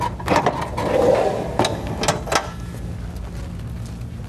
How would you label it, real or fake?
real